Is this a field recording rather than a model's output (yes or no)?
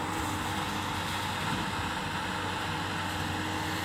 yes